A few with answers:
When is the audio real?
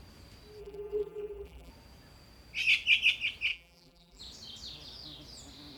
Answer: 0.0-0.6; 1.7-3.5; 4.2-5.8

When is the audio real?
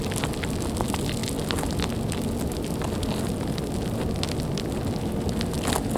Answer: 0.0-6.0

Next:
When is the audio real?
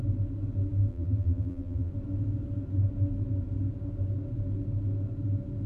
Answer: 0.0-0.9; 1.9-5.7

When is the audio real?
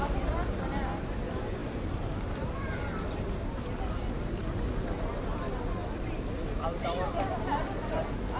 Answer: 0.0-1.6; 3.2-5.8; 7.1-8.4